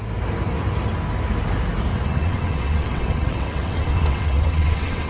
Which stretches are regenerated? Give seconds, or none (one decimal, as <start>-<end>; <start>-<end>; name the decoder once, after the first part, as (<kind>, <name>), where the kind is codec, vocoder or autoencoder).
1.9-5.1 (vocoder, WaveNeXt)